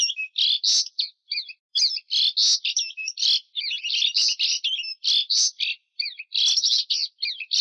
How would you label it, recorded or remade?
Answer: recorded